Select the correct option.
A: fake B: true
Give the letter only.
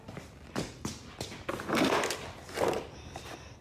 B